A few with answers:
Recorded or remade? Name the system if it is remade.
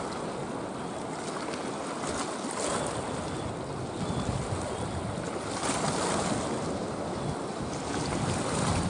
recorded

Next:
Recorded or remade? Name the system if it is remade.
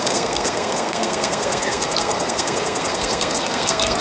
remade, codec, SNAC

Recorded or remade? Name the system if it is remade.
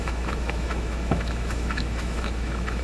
remade, autoencoder, DAC-VAE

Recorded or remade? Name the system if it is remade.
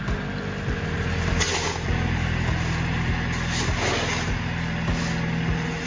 recorded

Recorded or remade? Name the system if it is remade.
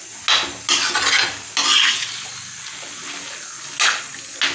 recorded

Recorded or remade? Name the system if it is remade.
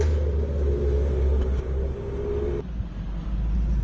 recorded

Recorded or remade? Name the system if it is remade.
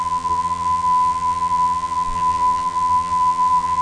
remade, vocoder, BigVGAN v2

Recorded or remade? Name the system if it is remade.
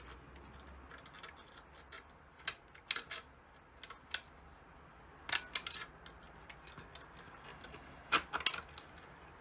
recorded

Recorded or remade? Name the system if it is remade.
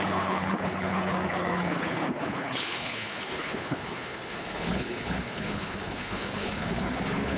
remade, codec, HILCodec